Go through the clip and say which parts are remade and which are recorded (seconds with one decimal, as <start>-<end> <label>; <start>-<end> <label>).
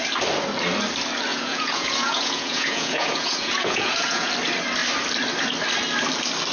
0.0-1.3 recorded; 1.3-4.3 remade; 4.3-6.5 recorded